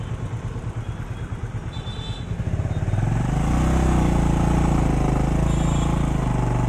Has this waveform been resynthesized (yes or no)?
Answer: no